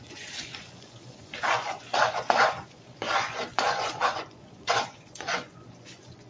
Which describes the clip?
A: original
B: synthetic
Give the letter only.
B